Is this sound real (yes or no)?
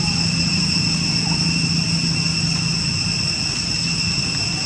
yes